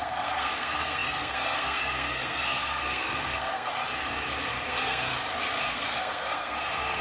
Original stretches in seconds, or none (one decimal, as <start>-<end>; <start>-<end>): 3.7-4.5; 5.1-5.6